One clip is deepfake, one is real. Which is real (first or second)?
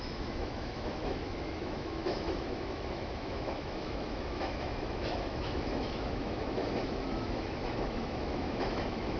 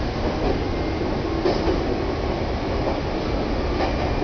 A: second